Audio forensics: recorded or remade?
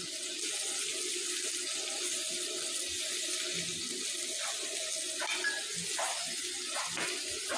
recorded